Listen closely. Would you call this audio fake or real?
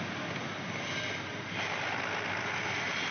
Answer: real